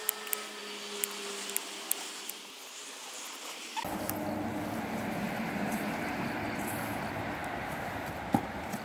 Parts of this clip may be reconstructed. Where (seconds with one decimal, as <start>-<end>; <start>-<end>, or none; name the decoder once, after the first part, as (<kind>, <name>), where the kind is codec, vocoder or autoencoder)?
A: none